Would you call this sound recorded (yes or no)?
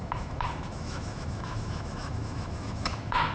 no